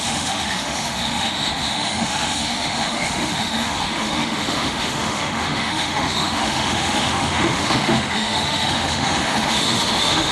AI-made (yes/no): yes